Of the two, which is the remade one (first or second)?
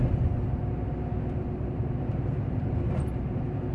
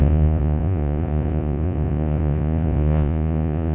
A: second